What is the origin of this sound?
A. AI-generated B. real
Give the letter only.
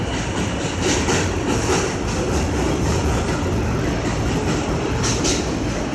B